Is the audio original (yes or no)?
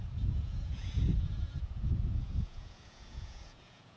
no